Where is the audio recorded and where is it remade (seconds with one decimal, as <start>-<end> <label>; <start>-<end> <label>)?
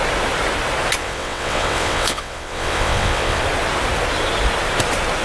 0.0-1.0 recorded; 1.0-3.4 remade; 3.4-5.2 recorded